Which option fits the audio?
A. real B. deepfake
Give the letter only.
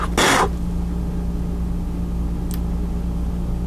A